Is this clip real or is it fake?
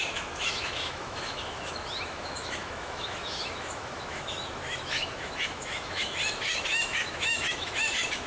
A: fake